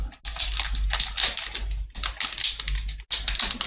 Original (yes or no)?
yes